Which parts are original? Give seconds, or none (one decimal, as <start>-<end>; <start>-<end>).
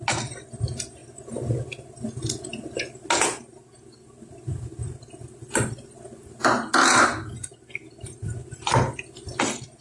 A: 0.0-9.8